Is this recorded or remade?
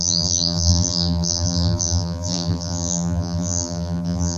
remade